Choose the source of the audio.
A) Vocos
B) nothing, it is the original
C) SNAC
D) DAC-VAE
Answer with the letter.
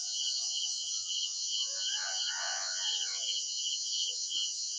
A